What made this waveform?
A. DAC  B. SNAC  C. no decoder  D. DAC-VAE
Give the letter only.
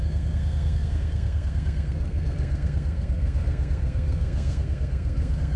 B